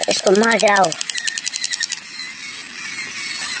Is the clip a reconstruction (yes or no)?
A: no